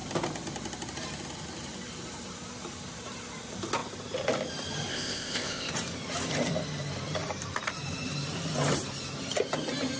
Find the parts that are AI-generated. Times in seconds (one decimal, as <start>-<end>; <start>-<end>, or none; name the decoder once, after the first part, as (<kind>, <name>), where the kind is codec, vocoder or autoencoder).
4.9-5.7 (codec, ZipCodec)